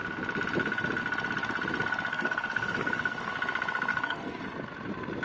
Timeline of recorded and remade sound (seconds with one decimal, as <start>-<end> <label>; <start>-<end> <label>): 0.0-2.1 recorded; 2.1-3.3 remade; 3.3-3.9 recorded; 3.9-4.4 remade; 4.4-5.2 recorded